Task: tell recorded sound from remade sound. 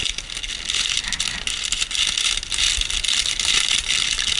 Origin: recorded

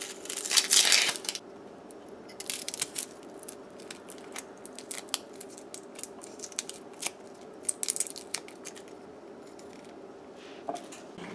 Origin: recorded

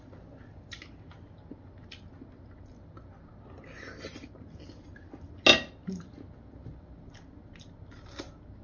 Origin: recorded